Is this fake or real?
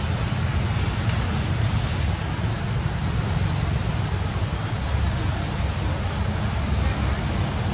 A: real